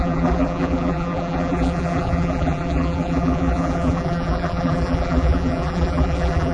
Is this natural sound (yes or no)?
no